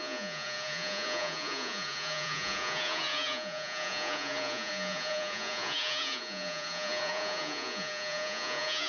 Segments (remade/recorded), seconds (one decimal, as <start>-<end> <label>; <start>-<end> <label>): 0.0-8.9 remade